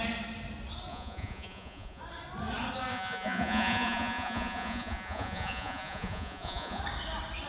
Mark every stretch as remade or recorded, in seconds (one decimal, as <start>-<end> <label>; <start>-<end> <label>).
0.0-0.9 recorded; 0.9-2.0 remade; 2.0-2.9 recorded; 2.9-6.8 remade; 6.8-7.5 recorded